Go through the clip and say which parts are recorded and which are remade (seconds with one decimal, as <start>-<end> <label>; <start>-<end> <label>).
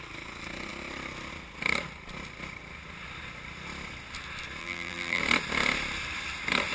0.0-4.6 recorded; 4.6-5.2 remade; 5.2-6.7 recorded